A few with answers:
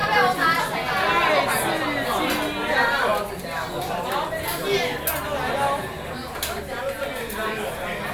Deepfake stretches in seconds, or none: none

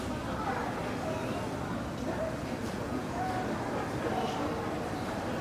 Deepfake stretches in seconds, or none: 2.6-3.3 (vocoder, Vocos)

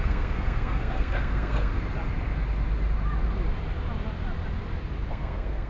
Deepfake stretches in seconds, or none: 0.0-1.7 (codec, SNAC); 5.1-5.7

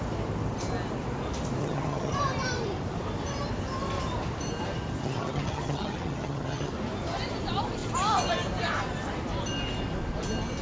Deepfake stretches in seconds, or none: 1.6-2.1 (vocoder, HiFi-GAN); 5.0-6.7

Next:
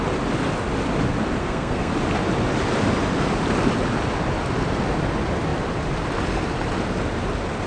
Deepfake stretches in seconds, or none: 1.4-1.9 (codec, SNAC)